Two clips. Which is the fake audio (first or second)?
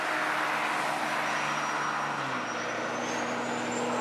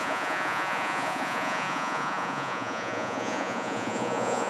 second